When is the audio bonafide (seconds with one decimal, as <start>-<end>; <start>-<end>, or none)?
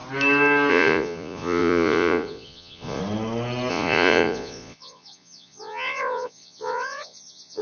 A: 0.0-0.7; 3.0-3.7